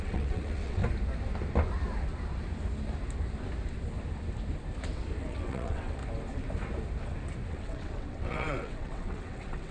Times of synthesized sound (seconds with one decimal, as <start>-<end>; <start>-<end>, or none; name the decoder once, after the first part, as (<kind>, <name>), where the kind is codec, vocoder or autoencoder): 0.0-0.8 (vocoder, WaveNeXt); 5.2-6.0; 7.5-9.7